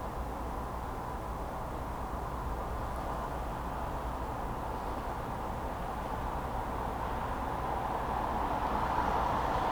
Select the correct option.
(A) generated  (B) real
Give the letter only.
B